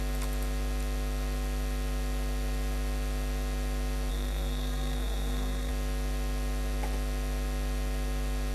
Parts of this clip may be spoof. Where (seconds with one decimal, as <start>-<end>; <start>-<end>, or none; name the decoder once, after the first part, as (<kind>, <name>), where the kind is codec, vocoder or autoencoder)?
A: 4.1-5.7 (codec, SNAC)